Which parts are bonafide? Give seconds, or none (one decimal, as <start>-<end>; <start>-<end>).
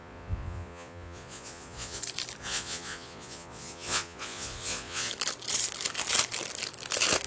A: 2.0-2.4; 5.1-7.3